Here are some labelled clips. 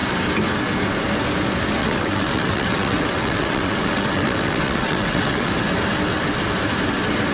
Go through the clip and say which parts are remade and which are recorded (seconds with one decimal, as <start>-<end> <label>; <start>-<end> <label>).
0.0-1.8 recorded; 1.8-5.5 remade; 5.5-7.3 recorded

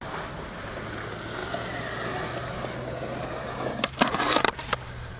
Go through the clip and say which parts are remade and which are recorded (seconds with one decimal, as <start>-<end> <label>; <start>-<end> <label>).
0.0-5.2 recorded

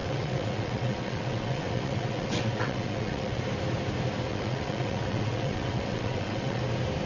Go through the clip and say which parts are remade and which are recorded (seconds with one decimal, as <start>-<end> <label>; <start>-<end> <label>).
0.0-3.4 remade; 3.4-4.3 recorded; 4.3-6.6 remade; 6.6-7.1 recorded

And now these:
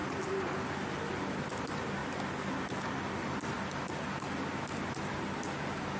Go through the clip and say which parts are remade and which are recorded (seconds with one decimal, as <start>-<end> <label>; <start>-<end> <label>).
0.0-6.0 recorded

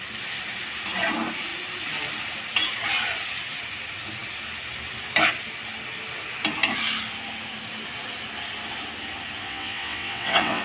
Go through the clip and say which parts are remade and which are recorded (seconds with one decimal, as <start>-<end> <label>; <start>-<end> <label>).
0.0-9.4 recorded; 9.4-10.6 remade

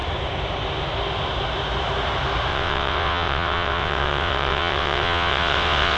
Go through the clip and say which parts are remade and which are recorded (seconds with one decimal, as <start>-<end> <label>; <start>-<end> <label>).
0.0-2.5 recorded; 2.5-6.0 remade

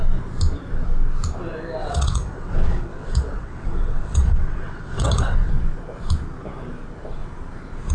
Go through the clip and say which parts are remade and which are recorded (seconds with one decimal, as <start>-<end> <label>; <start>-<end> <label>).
0.0-1.8 recorded; 1.8-5.5 remade; 5.5-7.9 recorded